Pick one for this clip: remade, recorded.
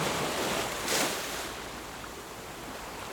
recorded